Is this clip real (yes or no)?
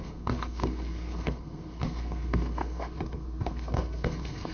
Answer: no